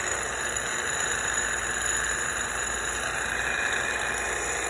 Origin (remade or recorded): recorded